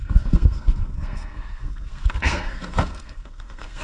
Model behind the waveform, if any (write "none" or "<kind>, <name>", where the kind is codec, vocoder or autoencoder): codec, SNAC